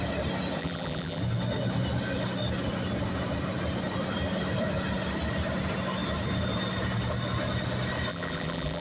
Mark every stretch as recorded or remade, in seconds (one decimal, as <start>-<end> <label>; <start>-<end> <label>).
0.0-0.6 recorded; 0.6-1.2 remade; 1.2-8.1 recorded; 8.1-8.8 remade